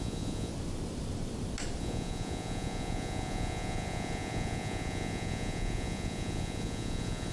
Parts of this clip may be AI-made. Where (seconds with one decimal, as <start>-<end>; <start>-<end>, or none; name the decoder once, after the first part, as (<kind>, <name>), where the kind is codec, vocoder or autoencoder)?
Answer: 0.0-0.5 (vocoder, Vocos); 1.8-7.3